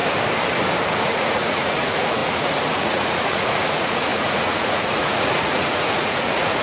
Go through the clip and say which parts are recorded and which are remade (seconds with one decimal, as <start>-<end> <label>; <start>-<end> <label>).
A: 0.0-1.0 recorded; 1.0-6.6 remade